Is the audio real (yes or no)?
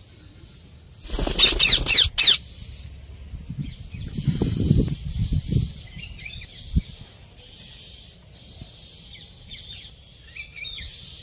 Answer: yes